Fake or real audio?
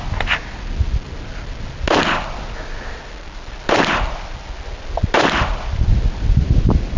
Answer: real